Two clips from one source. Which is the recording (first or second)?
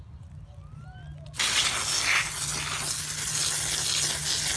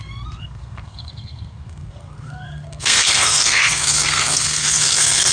first